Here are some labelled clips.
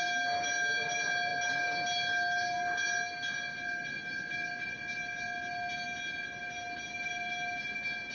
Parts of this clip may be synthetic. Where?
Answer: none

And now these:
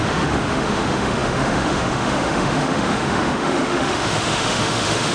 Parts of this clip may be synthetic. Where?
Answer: 0.0-5.1 (autoencoder, DAC-VAE)

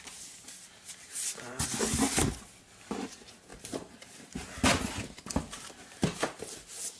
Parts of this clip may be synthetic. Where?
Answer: none

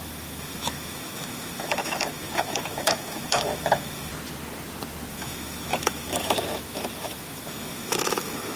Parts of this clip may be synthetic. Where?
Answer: 0.0-4.1 (autoencoder, DAC-VAE); 5.1-8.6

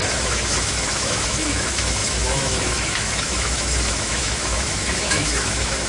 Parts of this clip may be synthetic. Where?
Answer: 0.0-5.9 (autoencoder, DAC-VAE)

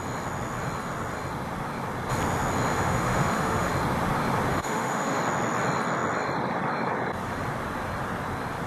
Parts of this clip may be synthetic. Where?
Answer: 2.7-3.7 (autoencoder, DAC-VAE); 4.5-5.2